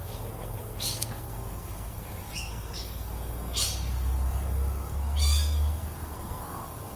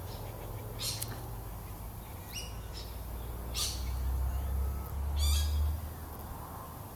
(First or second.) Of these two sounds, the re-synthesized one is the first